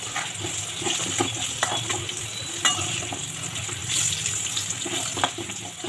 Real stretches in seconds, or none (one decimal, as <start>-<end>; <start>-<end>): 0.0-5.9